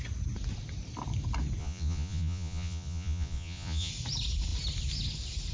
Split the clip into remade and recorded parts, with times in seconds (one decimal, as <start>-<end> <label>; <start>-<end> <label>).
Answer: 0.0-1.6 recorded; 1.6-3.9 remade; 3.9-5.5 recorded